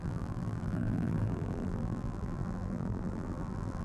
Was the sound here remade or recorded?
remade